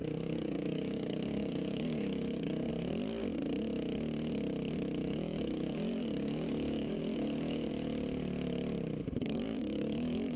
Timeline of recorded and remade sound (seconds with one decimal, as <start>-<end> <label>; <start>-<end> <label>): 0.0-2.7 remade; 2.7-5.0 recorded; 5.0-7.7 remade; 7.7-9.2 recorded; 9.2-10.4 remade